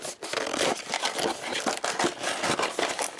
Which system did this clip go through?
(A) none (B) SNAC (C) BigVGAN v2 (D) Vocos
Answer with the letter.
A